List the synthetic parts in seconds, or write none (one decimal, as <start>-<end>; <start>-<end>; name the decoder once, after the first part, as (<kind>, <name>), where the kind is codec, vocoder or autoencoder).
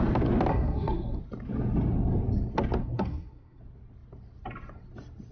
0.5-1.2 (codec, SNAC); 2.8-3.6